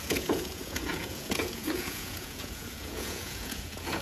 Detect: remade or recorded remade